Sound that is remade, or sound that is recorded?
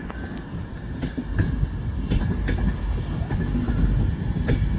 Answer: recorded